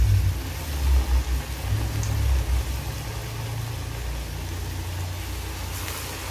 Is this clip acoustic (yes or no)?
yes